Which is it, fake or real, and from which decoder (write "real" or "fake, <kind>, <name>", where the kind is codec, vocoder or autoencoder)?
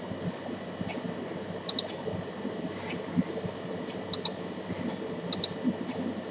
real